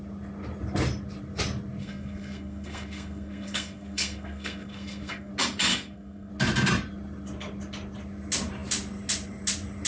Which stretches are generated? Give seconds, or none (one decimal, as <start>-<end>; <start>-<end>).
1.8-5.3; 5.7-6.3